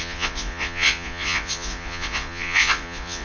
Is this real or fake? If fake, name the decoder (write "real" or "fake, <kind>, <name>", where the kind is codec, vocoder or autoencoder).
fake, vocoder, Vocos